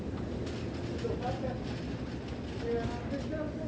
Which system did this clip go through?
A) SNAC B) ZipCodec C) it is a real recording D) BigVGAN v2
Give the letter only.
C